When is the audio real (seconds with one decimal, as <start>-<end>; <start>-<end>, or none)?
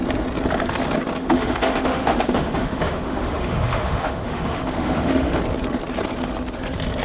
0.0-1.2; 5.4-7.0